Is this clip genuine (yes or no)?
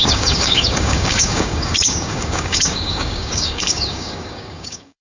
no